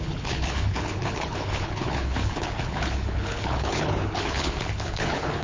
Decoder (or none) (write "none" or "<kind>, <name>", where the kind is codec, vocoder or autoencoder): codec, HILCodec